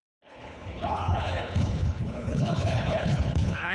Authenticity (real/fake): fake